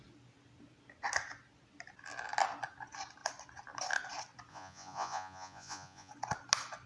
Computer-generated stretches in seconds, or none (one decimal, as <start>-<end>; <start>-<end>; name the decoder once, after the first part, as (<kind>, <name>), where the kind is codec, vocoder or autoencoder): 4.5-6.1 (vocoder, Vocos)